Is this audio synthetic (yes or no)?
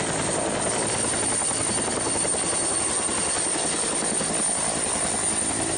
no